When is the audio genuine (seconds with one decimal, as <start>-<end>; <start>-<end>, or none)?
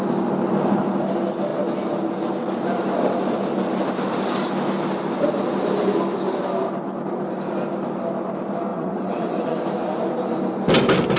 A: 0.0-8.7; 9.6-11.2